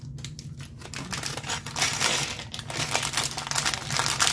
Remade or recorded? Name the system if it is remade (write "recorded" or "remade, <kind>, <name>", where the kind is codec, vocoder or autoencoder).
recorded